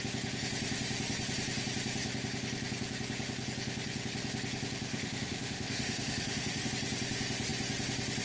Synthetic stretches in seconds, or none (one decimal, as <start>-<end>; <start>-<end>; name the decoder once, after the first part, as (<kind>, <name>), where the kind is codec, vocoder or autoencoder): 4.9-6.7 (autoencoder, DAC-VAE)